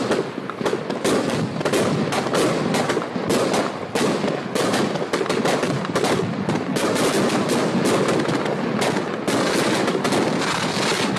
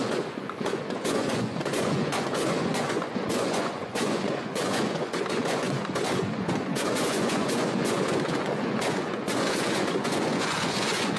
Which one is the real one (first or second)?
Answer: first